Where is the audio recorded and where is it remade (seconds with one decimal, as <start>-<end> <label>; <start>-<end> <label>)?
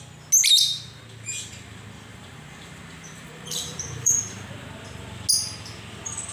0.0-2.1 recorded; 2.1-4.5 remade; 4.5-6.3 recorded